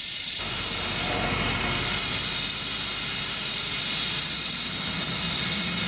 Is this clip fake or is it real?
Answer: real